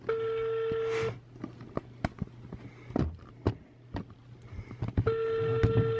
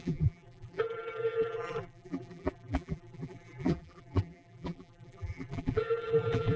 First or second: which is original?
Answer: first